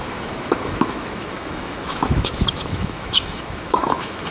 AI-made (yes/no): yes